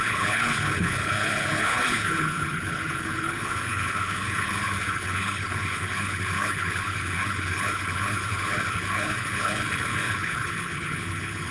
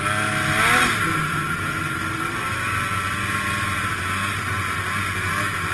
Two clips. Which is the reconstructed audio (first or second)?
first